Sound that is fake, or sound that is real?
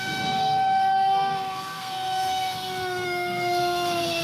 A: fake